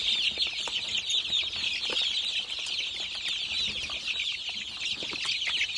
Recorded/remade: recorded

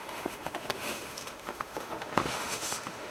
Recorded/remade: remade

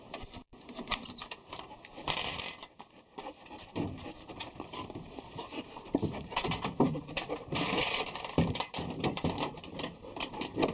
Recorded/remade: remade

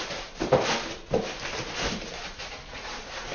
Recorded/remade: remade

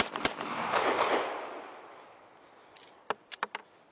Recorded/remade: recorded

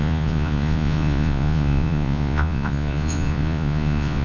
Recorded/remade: remade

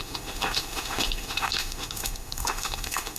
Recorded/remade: remade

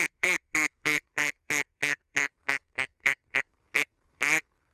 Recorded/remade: remade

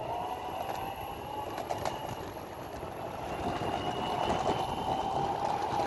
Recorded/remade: recorded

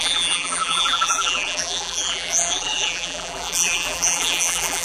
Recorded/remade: remade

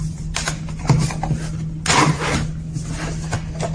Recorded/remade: recorded